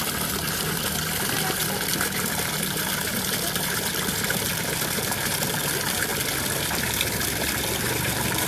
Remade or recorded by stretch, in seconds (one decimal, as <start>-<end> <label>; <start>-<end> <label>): 0.0-6.1 remade; 6.1-7.1 recorded; 7.1-8.5 remade